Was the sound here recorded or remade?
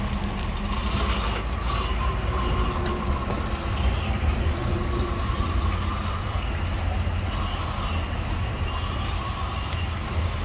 recorded